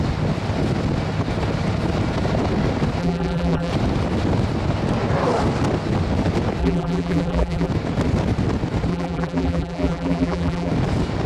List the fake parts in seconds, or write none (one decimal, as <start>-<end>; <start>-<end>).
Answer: 3.0-3.7; 6.6-7.7; 8.9-10.7